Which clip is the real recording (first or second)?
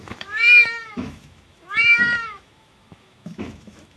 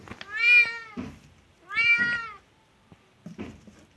second